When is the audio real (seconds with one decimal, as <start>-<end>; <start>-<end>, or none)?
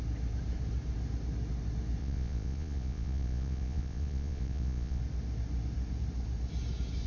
0.0-2.0; 5.0-7.1